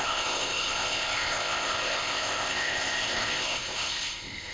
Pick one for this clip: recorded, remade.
remade